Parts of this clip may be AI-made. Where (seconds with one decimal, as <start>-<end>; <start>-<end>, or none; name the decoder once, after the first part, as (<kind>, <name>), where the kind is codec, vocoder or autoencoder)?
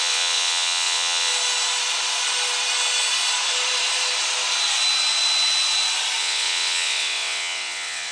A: 0.0-1.3 (vocoder, WaveNeXt); 6.2-8.1